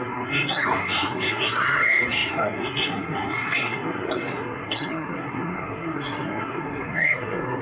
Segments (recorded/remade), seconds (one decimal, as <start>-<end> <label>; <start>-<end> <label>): 0.0-7.6 remade